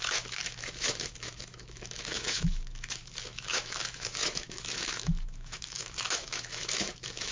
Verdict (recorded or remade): remade